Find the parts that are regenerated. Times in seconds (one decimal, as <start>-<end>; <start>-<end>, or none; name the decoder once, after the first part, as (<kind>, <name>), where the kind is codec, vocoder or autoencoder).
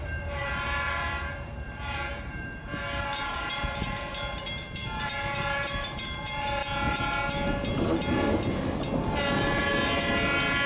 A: 0.0-6.6 (vocoder, BigVGAN v2)